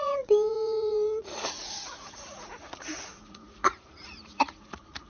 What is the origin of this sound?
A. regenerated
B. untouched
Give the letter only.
A